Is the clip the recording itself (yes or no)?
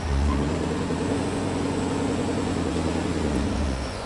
no